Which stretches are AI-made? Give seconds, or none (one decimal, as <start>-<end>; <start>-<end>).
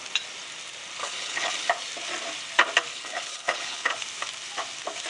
1.0-1.7; 2.9-3.9